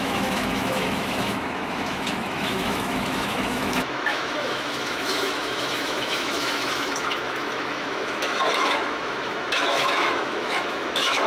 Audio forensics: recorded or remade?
remade